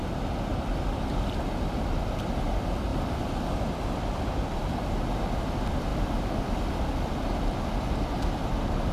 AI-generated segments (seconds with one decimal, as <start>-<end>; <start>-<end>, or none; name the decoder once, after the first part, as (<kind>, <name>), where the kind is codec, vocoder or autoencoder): 0.5-1.2 (vocoder, BigVGAN v2); 2.9-3.5